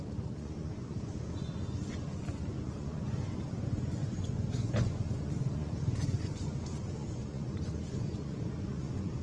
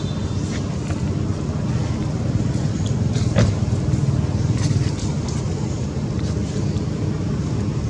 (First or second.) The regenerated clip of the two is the first